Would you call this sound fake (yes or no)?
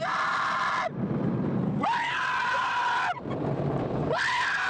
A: no